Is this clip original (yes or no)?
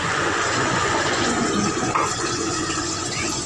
no